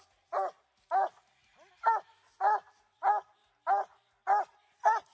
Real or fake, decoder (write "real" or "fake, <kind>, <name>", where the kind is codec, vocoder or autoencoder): real